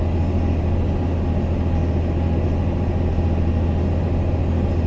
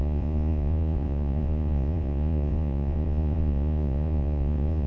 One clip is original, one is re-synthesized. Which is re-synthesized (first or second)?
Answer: second